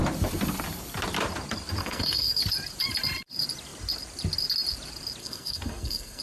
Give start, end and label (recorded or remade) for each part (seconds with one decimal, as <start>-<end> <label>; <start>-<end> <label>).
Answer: 0.0-1.8 recorded; 1.8-2.4 remade; 2.4-5.2 recorded; 5.2-6.2 remade